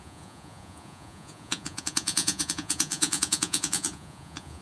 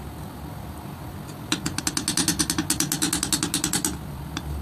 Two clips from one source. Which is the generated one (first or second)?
first